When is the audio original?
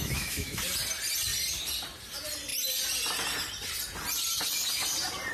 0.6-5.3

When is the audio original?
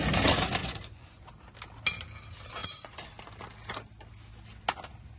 0.0-0.6; 1.3-2.6; 3.1-5.2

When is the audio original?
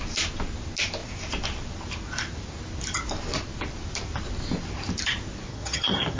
0.0-5.5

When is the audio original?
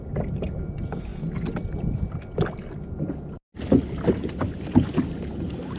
0.0-5.8